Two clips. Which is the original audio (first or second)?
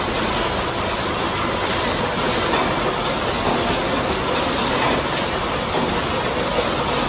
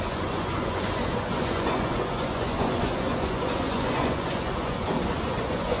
first